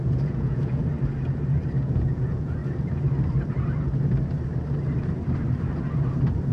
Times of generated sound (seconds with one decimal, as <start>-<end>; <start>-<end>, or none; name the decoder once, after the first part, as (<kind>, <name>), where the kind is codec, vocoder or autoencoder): 0.0-0.9 (vocoder, Vocos); 1.8-2.6